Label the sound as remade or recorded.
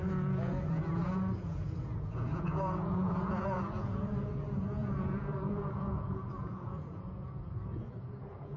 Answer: remade